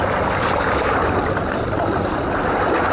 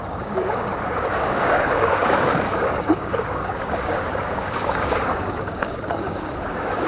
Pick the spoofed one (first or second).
second